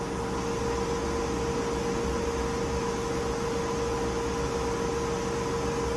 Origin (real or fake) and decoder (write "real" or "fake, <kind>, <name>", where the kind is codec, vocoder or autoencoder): real